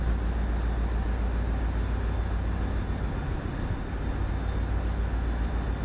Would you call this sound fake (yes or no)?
no